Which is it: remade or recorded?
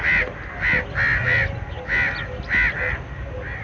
recorded